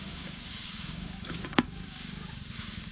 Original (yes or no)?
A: no